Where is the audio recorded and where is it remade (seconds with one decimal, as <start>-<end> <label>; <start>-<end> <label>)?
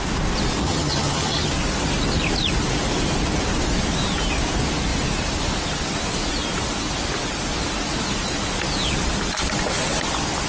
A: 0.0-0.6 recorded; 0.6-1.5 remade; 1.5-10.5 recorded